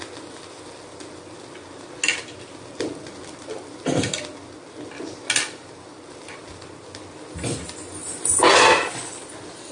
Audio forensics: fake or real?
real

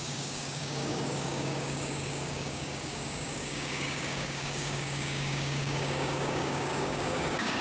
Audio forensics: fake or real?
fake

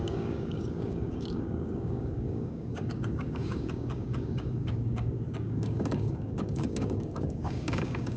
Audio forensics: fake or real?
fake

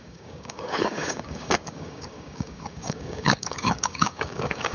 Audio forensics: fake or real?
fake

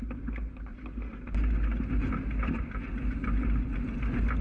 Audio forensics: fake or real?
real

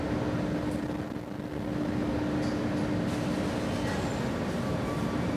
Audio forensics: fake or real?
real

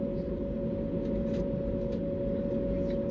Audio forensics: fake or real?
real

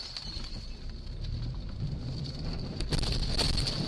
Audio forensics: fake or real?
real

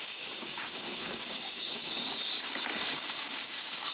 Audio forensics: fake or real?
fake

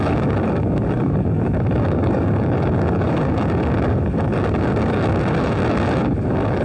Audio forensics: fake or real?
fake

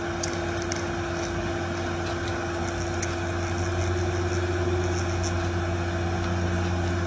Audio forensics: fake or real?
real